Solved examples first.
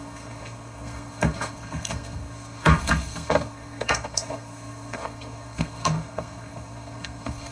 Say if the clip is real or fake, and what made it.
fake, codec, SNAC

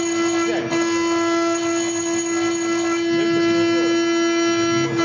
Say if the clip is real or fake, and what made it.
real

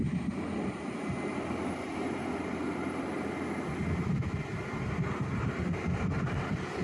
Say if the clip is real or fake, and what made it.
real